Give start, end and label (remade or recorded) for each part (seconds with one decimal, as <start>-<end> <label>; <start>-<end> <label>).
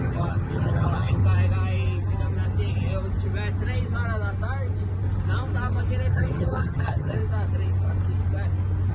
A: 0.0-1.2 remade; 1.2-6.1 recorded; 6.1-7.2 remade; 7.2-8.9 recorded